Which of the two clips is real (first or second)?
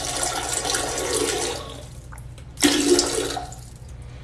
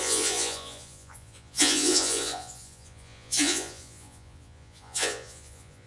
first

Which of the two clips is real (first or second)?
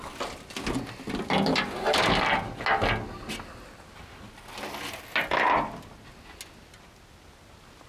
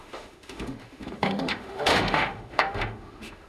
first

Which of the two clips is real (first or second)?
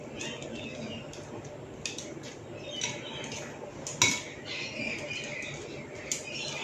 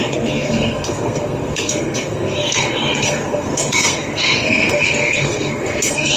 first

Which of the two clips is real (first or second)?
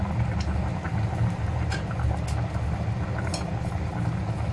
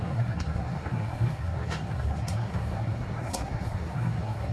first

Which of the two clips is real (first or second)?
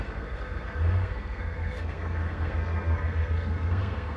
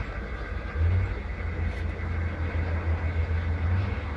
second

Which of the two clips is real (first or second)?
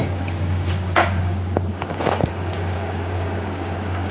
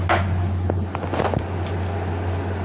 second